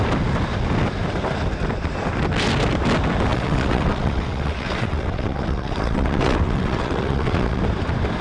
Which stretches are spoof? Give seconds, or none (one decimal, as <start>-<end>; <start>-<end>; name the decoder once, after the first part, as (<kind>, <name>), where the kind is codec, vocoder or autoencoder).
3.3-7.6 (vocoder, WaveNeXt)